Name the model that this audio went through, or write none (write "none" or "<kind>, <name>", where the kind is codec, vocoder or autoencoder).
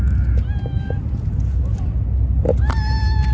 none